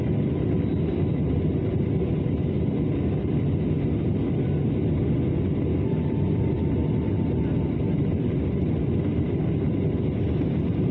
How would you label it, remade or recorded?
recorded